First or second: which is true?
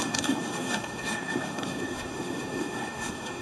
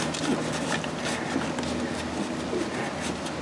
second